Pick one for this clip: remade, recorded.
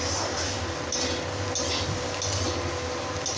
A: recorded